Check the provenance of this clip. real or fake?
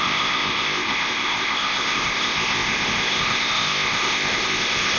fake